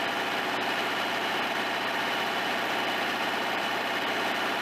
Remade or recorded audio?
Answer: remade